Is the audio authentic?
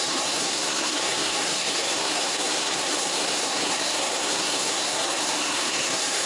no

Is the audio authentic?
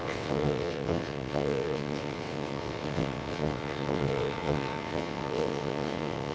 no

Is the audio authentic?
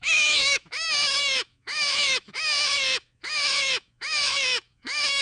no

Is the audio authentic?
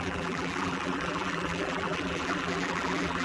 no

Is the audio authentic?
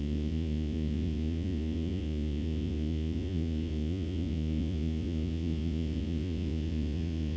no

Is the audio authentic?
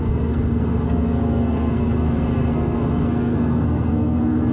no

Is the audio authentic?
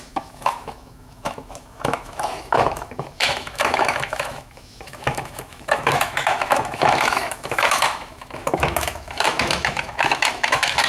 no